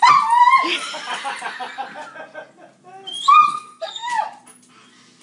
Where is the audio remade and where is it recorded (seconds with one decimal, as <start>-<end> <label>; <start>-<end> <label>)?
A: 0.0-3.5 recorded; 3.5-4.1 remade; 4.1-5.2 recorded